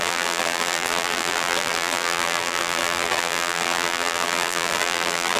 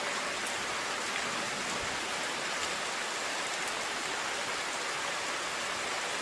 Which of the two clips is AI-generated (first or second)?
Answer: first